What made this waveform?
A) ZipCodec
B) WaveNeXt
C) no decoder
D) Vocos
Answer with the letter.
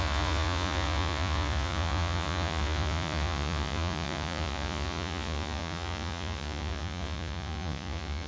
D